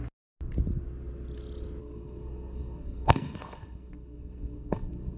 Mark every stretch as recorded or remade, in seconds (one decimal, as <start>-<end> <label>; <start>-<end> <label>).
0.0-1.8 recorded; 1.8-5.2 remade